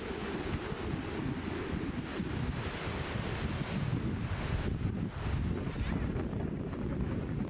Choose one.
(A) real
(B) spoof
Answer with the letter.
A